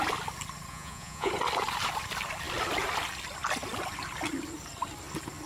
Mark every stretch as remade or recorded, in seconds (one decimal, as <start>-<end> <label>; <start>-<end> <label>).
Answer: 0.0-0.7 recorded; 0.7-1.3 remade; 1.3-5.5 recorded